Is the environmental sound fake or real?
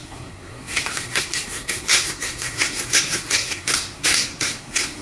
fake